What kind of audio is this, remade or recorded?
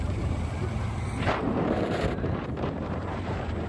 remade